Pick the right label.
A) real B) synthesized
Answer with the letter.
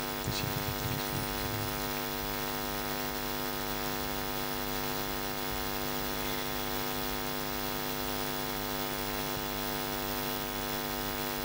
A